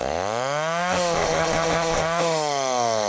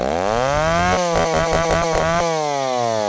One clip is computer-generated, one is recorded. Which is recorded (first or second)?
second